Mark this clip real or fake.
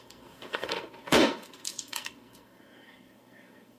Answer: fake